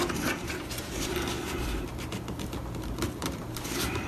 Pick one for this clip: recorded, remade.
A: recorded